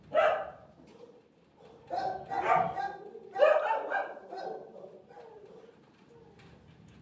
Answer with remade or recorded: recorded